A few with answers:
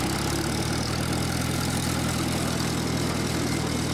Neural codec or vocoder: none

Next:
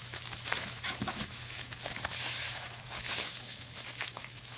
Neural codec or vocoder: autoencoder, DAC-VAE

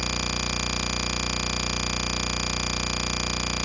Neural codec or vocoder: none